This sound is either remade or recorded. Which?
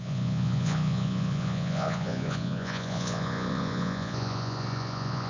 remade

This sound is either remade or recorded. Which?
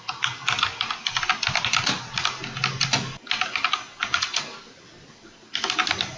recorded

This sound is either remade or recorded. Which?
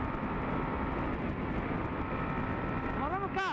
recorded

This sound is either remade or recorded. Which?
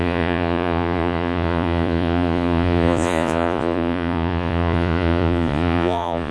remade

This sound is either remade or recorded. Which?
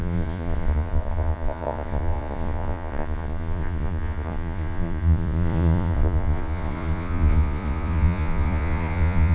remade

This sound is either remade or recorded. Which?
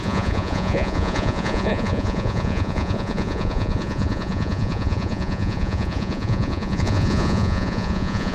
remade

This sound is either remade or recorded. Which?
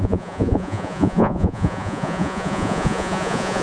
remade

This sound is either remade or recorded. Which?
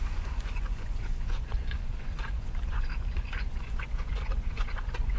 remade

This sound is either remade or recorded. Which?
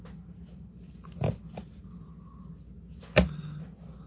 recorded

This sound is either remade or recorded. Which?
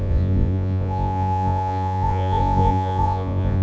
remade